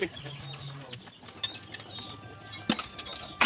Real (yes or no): yes